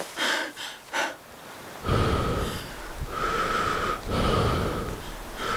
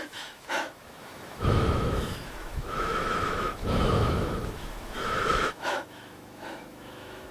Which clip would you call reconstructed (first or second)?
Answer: second